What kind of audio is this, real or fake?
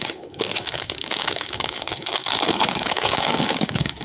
fake